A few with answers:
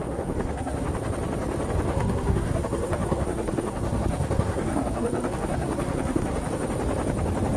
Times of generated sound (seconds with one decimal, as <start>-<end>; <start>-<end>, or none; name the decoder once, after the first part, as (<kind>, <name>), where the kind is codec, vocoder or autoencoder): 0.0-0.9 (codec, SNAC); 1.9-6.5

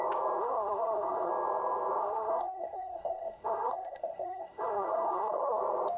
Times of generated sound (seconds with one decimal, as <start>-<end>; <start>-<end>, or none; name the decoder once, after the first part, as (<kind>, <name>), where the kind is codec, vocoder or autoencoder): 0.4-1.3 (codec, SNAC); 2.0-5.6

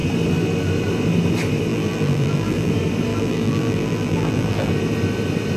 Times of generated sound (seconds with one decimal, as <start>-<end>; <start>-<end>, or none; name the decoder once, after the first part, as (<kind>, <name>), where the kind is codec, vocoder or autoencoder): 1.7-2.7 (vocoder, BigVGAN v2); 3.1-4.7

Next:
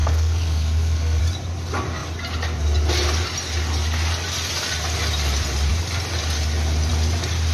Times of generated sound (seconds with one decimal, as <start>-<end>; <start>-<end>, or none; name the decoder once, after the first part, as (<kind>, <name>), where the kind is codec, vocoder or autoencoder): 0.0-1.2 (codec, SNAC)

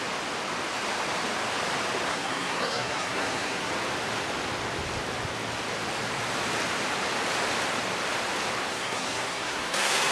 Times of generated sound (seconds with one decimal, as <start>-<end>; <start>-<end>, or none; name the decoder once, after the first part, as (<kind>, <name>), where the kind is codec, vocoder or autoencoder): 2.1-3.7 (codec, SNAC); 8.7-10.1

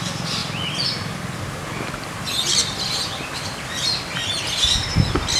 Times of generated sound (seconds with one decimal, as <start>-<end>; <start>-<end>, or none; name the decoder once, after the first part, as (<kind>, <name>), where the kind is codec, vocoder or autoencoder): none

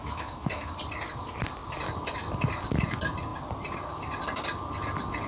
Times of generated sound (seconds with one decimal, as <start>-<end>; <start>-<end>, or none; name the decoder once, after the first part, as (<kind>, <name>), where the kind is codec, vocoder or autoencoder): 0.0-0.7 (autoencoder, DAC-VAE)